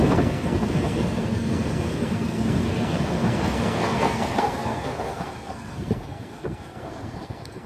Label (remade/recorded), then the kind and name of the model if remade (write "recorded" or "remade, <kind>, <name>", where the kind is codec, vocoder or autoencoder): remade, codec, SNAC